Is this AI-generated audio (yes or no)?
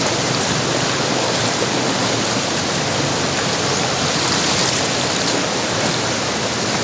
no